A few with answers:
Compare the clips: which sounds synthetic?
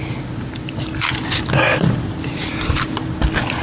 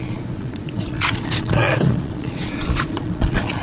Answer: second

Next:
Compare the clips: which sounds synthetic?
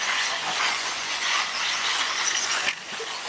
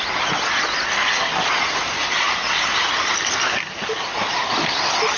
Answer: first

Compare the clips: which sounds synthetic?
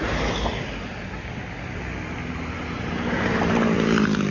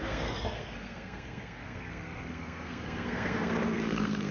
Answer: second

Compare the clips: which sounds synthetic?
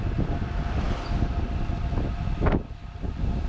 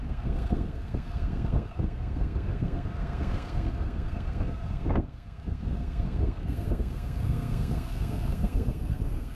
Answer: second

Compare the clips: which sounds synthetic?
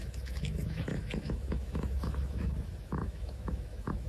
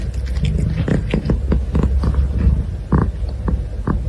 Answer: first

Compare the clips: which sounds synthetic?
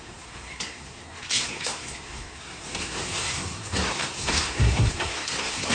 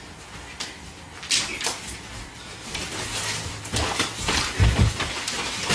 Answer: first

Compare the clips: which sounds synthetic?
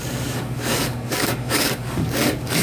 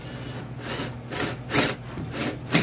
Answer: first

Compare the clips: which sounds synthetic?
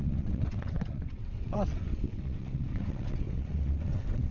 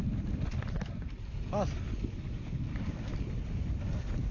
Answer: first